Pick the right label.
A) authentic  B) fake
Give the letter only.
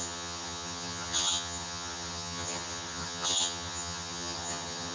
B